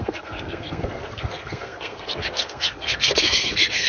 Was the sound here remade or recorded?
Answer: remade